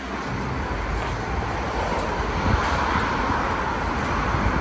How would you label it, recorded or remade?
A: recorded